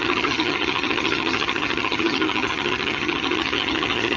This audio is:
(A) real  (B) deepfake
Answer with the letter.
B